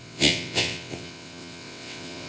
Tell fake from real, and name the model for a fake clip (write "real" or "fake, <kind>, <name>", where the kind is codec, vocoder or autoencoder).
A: fake, vocoder, WaveNeXt